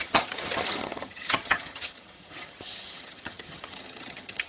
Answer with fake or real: fake